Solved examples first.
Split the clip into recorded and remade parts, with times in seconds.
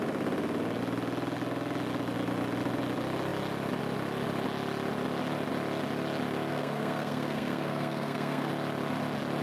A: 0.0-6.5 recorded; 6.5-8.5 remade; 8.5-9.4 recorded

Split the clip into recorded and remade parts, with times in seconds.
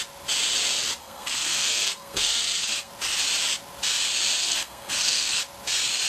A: 0.0-1.0 recorded; 1.0-2.9 remade; 2.9-4.4 recorded; 4.4-5.4 remade; 5.4-6.1 recorded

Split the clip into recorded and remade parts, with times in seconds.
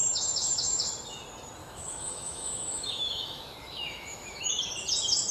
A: 0.0-0.9 remade; 0.9-1.6 recorded; 1.6-4.6 remade; 4.6-5.3 recorded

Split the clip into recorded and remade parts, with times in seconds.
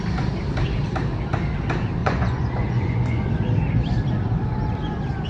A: 0.0-2.0 recorded; 2.0-3.3 remade; 3.3-5.3 recorded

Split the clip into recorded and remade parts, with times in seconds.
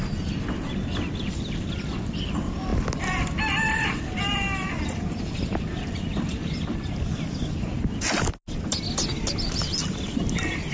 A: 0.0-10.7 recorded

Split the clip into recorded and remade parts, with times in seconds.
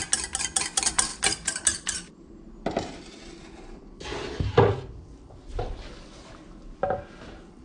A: 0.0-1.1 recorded; 1.1-2.4 remade; 2.4-7.6 recorded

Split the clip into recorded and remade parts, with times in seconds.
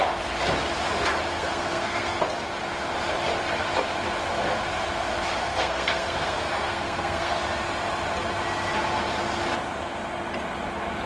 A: 0.0-1.3 recorded; 1.3-2.2 remade; 2.2-5.4 recorded; 5.4-7.4 remade; 7.4-11.1 recorded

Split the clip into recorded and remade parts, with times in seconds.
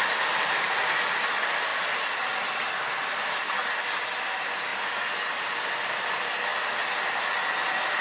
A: 0.0-8.0 recorded